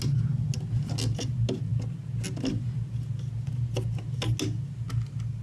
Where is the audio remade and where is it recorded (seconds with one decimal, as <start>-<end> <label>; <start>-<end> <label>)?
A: 0.0-5.4 recorded